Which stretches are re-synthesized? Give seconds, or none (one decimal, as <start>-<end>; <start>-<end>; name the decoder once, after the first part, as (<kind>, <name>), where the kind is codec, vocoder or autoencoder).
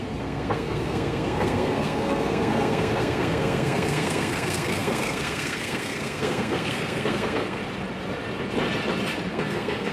0.0-7.6 (codec, SNAC); 9.3-9.9